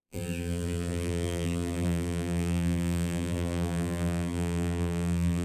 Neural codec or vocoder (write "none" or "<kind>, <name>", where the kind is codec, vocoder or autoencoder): vocoder, BigVGAN v2